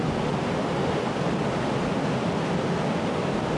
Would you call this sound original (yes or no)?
yes